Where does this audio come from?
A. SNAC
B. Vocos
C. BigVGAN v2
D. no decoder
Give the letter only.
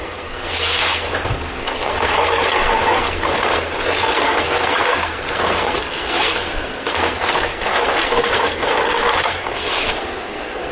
A